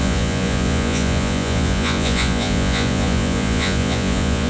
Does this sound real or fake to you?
fake